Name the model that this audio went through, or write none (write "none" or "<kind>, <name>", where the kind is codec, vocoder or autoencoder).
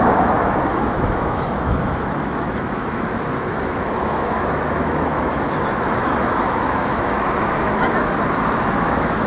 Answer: autoencoder, DAC-VAE